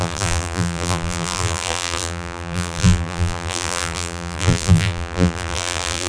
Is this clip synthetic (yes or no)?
yes